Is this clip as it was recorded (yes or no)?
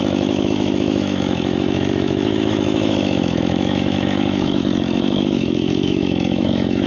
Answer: no